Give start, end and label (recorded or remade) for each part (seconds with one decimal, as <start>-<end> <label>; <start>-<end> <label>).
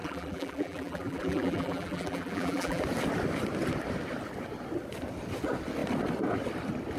0.0-2.8 remade; 2.8-7.0 recorded